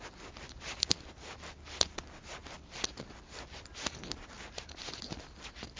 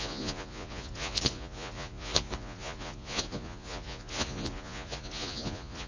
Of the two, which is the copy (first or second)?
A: second